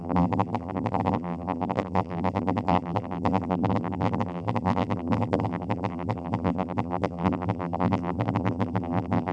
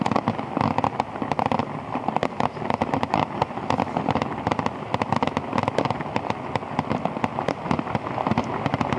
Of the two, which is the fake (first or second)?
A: first